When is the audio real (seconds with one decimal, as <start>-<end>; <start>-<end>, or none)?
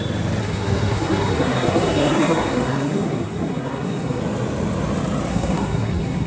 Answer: 0.0-0.4; 4.2-5.3